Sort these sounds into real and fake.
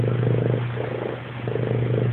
real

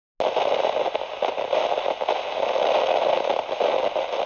real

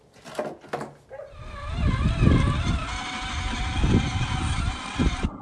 real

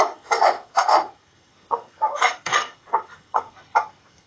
fake